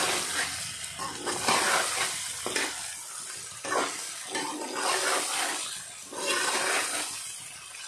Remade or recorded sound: recorded